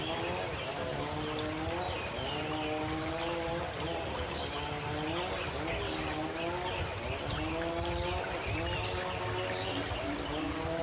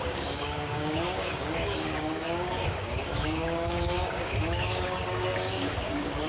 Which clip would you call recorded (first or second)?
first